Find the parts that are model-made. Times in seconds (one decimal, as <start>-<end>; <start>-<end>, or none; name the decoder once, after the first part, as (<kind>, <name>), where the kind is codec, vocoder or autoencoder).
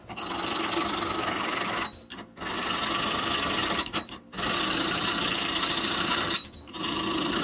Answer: 3.6-7.4 (vocoder, BigVGAN v2)